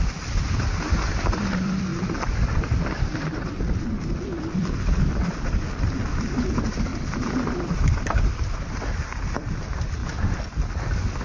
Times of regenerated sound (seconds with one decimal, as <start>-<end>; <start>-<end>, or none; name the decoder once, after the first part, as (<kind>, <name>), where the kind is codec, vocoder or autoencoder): 0.0-10.0 (vocoder, BigVGAN v2)